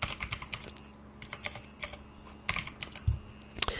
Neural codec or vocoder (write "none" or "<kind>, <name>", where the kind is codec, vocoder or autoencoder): none